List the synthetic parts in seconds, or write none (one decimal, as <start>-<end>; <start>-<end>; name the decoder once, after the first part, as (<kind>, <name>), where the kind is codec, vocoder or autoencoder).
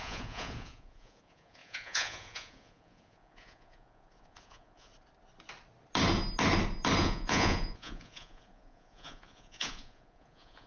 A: 0.0-4.9 (vocoder, Vocos); 7.0-10.7